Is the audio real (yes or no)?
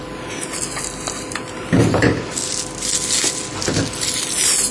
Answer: yes